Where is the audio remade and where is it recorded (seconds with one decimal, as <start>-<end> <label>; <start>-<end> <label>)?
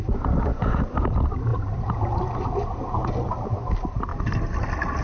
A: 0.0-5.0 recorded